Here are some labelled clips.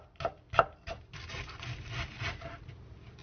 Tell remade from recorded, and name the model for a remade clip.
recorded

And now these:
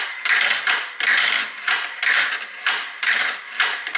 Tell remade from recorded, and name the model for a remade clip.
remade, vocoder, BigVGAN v2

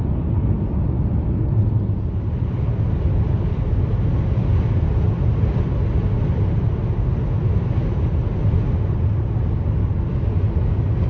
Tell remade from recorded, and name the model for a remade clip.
recorded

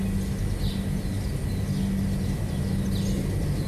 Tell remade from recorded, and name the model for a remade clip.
recorded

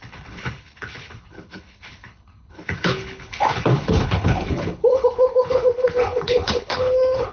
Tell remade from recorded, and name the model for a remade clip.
remade, codec, HILCodec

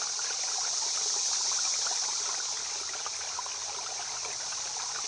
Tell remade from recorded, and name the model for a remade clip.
recorded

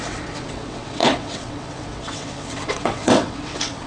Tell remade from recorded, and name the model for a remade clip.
remade, vocoder, WaveNeXt